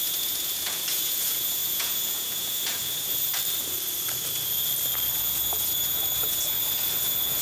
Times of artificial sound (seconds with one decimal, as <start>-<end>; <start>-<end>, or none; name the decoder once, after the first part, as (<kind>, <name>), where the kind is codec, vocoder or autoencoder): 0.0-3.3 (vocoder, Vocos); 5.2-7.4